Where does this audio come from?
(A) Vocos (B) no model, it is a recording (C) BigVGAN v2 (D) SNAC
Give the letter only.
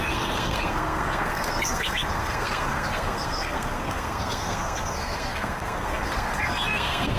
D